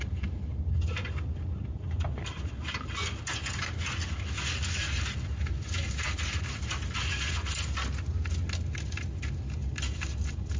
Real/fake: real